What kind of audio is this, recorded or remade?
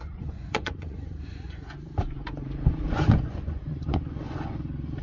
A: remade